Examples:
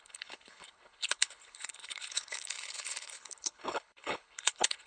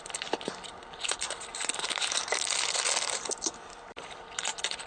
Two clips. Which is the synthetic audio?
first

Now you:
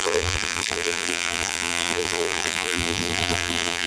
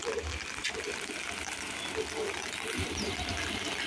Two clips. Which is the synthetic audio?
first